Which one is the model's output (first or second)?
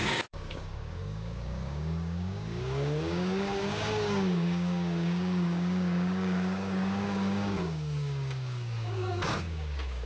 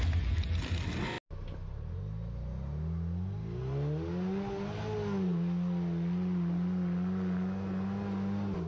first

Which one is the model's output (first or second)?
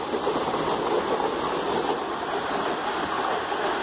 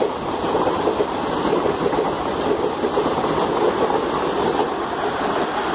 second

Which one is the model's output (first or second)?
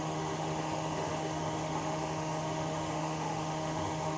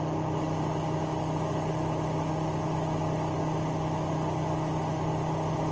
first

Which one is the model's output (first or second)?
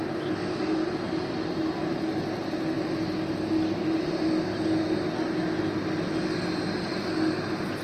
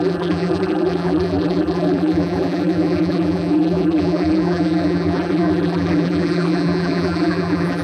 second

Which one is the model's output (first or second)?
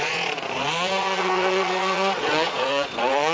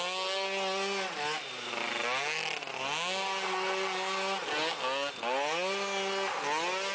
first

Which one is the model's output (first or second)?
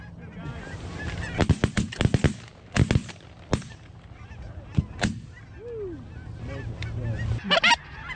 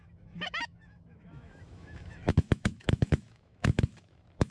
second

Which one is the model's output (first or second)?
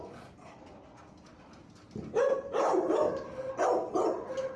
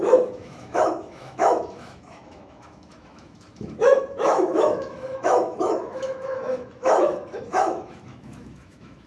second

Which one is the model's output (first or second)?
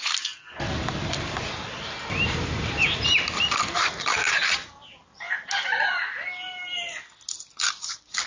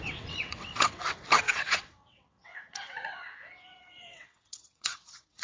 second